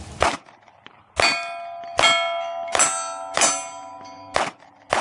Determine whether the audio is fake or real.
real